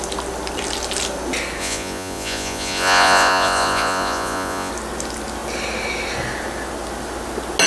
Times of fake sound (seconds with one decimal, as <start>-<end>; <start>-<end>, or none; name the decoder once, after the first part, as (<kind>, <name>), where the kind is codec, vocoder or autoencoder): 1.6-4.7 (vocoder, Vocos)

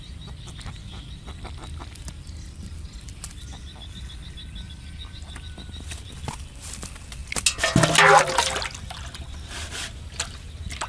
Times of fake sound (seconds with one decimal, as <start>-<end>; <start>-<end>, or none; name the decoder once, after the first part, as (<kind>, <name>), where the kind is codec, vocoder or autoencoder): none

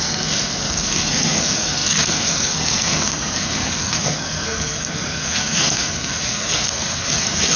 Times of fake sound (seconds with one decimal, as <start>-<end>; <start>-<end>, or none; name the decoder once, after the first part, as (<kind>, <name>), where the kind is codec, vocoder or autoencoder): 0.0-7.6 (codec, SNAC)

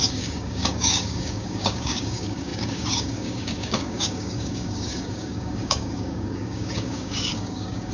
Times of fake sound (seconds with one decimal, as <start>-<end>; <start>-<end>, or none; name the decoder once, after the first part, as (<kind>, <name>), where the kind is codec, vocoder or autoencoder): 0.0-7.9 (codec, DAC)

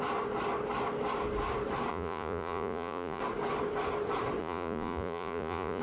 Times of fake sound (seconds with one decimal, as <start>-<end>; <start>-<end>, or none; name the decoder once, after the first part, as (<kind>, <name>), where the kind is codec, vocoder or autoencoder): 1.9-3.2 (vocoder, Vocos); 4.4-5.8

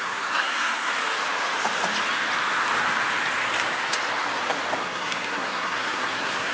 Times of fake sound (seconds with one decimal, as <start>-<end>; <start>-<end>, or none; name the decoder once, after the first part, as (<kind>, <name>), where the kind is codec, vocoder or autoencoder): 0.0-0.9 (codec, SNAC); 4.8-6.5

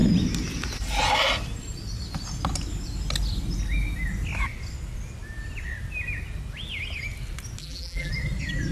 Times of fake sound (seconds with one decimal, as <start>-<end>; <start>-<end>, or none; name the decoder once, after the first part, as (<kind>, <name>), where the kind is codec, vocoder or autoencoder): 7.6-8.1 (vocoder, BigVGAN v2)

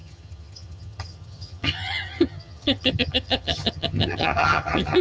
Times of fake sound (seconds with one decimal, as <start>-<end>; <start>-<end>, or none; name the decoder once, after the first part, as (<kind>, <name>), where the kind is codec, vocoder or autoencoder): 0.0-5.0 (vocoder, HiFi-GAN)